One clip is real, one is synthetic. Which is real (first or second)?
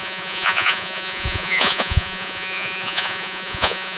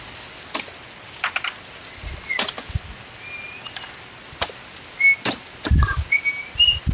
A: second